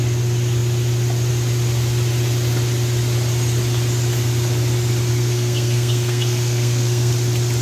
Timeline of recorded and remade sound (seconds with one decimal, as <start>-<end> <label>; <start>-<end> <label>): 0.0-5.1 recorded; 5.1-7.1 remade; 7.1-7.6 recorded